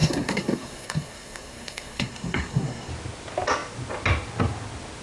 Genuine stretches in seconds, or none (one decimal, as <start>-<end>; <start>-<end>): 2.9-5.0